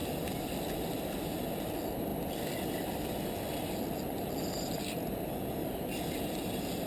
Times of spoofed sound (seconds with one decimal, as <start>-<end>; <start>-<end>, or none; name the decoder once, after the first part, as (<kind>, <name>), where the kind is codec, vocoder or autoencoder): none